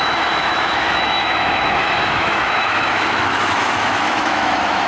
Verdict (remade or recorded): remade